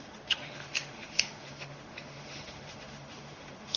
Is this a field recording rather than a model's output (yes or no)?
no